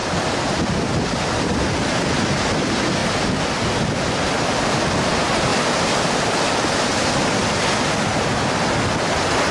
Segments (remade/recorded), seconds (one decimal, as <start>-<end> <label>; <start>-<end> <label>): 0.0-2.4 remade; 2.4-5.5 recorded; 5.5-6.2 remade; 6.2-9.5 recorded